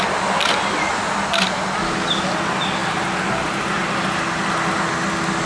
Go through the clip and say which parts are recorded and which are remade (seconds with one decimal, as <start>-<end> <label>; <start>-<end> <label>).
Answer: 0.0-5.5 recorded